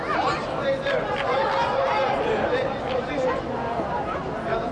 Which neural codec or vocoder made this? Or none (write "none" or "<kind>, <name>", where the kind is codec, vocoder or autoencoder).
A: none